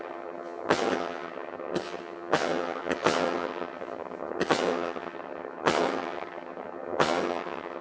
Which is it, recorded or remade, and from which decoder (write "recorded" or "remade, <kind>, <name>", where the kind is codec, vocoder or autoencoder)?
remade, vocoder, HiFi-GAN